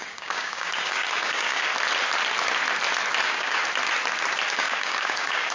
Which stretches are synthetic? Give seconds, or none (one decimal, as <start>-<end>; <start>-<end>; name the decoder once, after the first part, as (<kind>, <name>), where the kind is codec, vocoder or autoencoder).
0.0-1.7 (codec, DAC); 3.2-3.6; 4.5-5.5